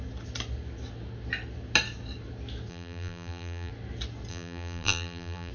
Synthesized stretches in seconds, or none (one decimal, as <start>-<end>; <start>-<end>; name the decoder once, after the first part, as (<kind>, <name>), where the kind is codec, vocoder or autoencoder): 2.7-3.7 (vocoder, BigVGAN v2); 4.3-5.5